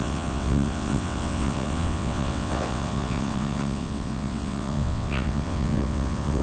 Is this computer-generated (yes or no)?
yes